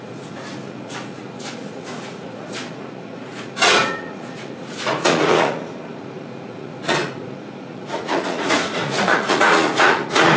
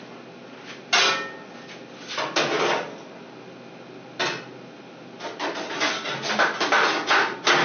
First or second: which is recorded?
second